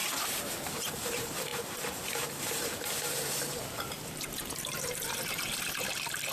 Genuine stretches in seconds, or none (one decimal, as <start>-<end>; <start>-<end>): 0.0-0.7